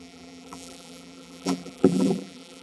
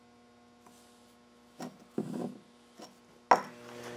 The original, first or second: second